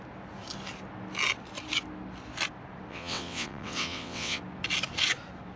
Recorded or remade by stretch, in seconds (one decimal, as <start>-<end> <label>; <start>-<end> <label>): 0.0-2.9 recorded; 2.9-4.4 remade; 4.4-5.6 recorded